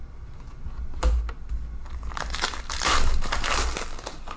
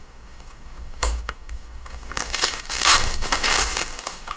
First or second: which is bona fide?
first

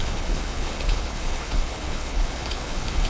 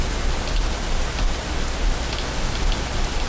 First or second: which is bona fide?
second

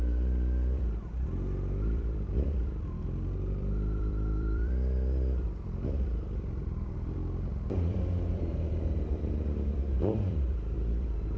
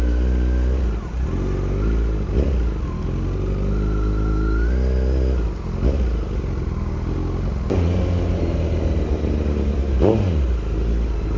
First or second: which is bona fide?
second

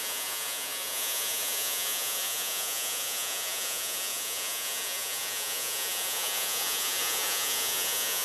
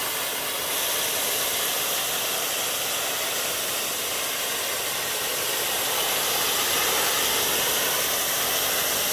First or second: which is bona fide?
second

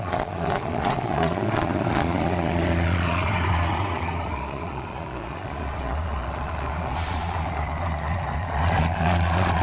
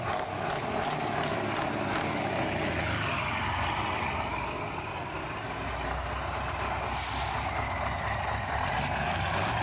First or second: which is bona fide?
second